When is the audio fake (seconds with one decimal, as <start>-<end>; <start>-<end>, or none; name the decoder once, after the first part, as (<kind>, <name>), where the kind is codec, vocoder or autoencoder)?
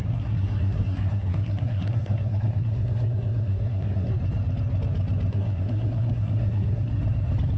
0.0-4.1 (codec, SNAC); 5.3-6.9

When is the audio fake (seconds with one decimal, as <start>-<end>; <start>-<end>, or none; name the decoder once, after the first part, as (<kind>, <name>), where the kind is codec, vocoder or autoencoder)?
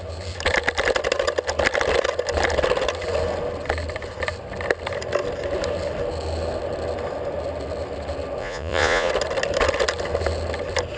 8.4-9.1 (vocoder, Vocos)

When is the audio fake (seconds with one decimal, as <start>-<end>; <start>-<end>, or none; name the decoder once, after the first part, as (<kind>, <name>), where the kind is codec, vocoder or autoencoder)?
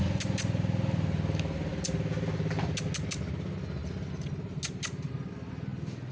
none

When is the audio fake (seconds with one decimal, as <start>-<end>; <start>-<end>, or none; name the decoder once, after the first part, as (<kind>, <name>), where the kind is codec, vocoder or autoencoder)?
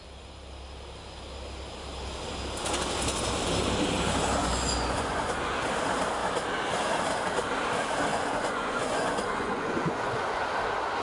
4.4-5.6 (vocoder, Vocos); 8.1-10.4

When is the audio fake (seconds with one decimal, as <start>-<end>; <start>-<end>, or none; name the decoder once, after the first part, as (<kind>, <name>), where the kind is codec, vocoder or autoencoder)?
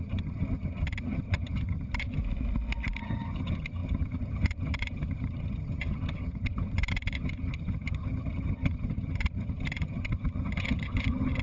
0.0-2.2 (vocoder, HiFi-GAN); 3.0-11.4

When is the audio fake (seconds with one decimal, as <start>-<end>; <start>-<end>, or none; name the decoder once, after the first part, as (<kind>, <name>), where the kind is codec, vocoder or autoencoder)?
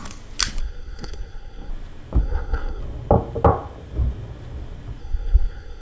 0.6-1.7 (codec, SNAC); 2.2-2.8; 5.0-5.8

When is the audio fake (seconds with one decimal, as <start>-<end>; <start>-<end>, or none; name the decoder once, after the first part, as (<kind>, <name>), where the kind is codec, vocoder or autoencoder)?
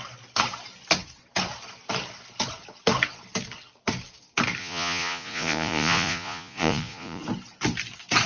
4.6-7.2 (vocoder, Vocos)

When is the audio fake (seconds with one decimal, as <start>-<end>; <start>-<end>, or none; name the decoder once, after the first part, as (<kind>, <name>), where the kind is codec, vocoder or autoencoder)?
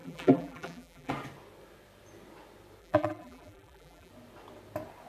0.0-1.1 (vocoder, BigVGAN v2); 2.8-4.1